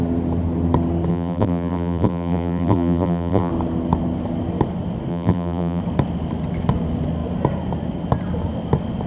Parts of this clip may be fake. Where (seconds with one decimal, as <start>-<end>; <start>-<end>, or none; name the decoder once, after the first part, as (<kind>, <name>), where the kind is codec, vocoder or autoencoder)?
1.1-3.5 (vocoder, BigVGAN v2); 5.1-5.8